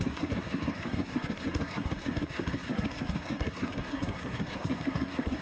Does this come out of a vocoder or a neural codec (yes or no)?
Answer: yes